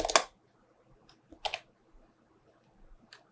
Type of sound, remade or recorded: recorded